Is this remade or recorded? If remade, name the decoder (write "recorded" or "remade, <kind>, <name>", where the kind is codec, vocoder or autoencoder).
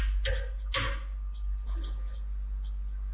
recorded